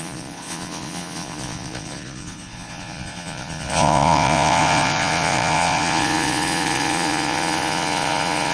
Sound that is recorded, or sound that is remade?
remade